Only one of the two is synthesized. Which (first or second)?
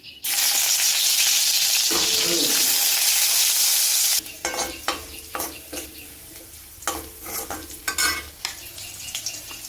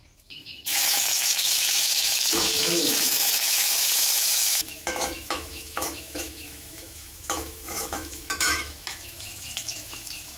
second